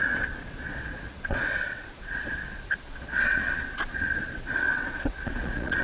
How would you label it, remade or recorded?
remade